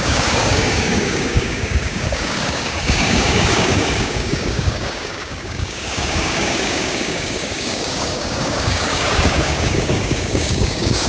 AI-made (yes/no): yes